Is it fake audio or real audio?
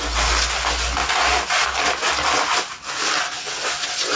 real